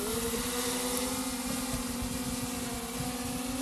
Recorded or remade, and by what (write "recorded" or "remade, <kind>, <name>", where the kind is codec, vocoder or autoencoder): recorded